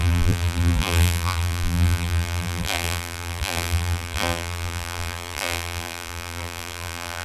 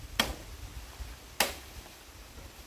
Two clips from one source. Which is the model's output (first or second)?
first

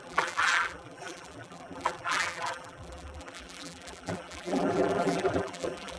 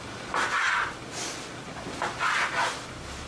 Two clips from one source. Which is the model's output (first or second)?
first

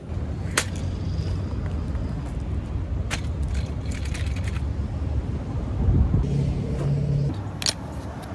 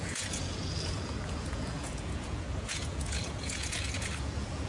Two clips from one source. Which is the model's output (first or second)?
second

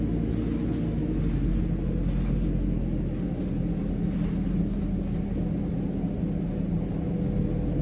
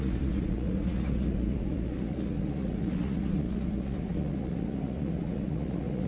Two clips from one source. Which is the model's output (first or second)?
second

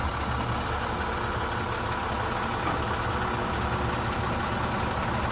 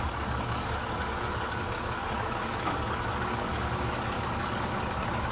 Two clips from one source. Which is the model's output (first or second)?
second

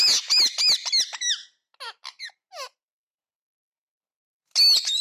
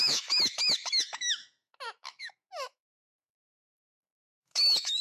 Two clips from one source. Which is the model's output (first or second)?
second